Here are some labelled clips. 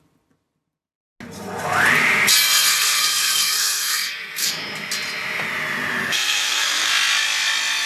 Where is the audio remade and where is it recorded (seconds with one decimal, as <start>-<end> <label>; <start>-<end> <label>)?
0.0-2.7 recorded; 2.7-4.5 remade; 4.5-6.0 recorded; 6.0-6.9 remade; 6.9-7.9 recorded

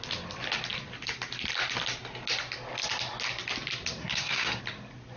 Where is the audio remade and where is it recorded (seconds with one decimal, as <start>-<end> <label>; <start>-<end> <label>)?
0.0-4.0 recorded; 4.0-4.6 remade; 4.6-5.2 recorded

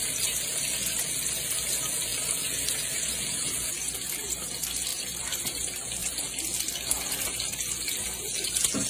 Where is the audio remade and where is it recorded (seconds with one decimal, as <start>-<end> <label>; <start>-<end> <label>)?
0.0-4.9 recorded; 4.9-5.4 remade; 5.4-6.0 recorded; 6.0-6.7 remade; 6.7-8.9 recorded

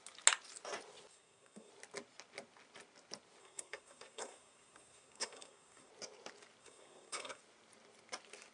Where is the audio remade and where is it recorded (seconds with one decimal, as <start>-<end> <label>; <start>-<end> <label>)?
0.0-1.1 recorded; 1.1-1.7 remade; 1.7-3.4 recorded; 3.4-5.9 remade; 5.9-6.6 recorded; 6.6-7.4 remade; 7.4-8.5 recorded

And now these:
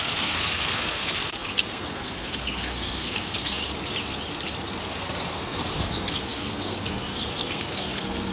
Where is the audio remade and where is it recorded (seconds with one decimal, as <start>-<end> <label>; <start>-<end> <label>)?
0.0-3.6 remade; 3.6-4.8 recorded; 4.8-8.3 remade

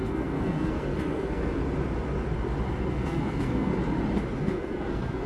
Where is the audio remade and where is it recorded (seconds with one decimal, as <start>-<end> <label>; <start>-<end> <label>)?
0.0-1.6 remade; 1.6-2.9 recorded; 2.9-3.7 remade; 3.7-4.4 recorded; 4.4-5.3 remade

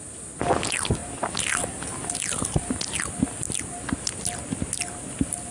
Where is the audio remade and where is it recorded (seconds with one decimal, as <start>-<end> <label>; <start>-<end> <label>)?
0.0-5.5 recorded

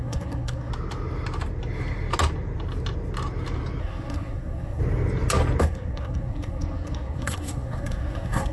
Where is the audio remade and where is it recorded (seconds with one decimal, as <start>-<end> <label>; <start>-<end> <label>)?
0.0-0.7 remade; 0.7-3.8 recorded; 3.8-4.8 remade; 4.8-5.6 recorded; 5.6-8.5 remade